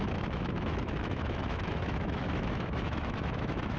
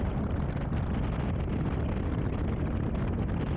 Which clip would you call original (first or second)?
second